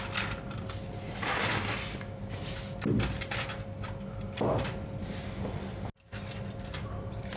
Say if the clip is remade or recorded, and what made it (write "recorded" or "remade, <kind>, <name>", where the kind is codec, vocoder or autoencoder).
recorded